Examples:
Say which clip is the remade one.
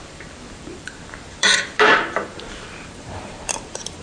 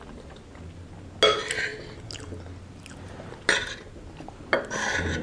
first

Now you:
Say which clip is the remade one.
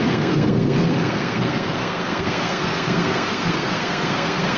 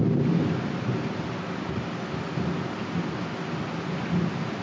first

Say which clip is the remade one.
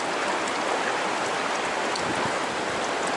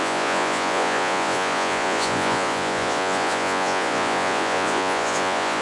second